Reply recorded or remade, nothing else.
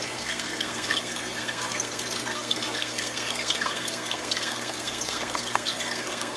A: remade